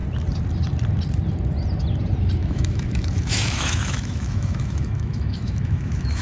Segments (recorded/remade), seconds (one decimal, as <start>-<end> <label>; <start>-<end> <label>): 0.0-2.4 recorded; 2.4-6.2 remade